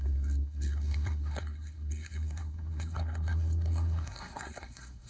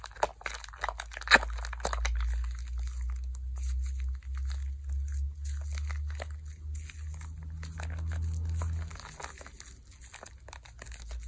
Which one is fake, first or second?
first